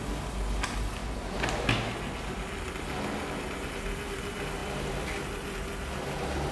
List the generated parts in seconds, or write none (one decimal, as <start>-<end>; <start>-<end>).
none